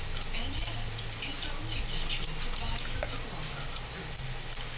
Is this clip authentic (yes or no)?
yes